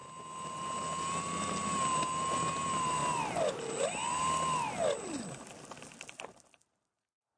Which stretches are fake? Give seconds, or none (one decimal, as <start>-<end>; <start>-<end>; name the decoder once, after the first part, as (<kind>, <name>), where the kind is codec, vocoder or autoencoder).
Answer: none

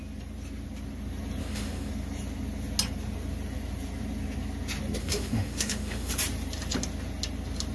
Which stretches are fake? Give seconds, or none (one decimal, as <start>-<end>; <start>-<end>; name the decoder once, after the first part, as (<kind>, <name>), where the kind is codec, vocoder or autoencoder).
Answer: 1.4-1.9 (autoencoder, DAC-VAE); 5.0-6.1

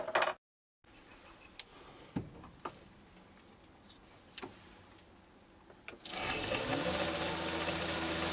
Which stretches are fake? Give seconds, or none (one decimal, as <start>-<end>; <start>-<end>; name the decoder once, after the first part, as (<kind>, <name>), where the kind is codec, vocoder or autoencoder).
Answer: none